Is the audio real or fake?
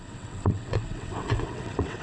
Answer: fake